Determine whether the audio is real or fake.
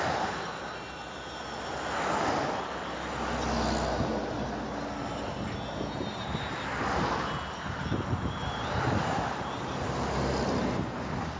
real